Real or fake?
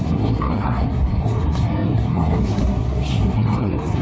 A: fake